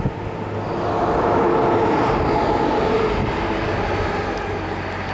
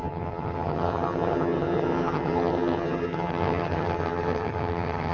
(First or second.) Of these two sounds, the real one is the first